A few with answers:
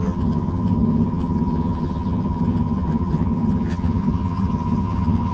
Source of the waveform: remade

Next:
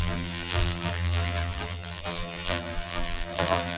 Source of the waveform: remade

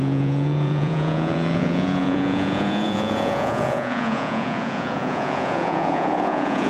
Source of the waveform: remade